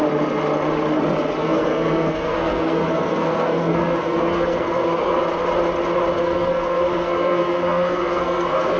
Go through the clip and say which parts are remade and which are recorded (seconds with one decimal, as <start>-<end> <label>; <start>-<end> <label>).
0.0-1.4 recorded; 1.4-5.2 remade; 5.2-6.2 recorded; 6.2-8.8 remade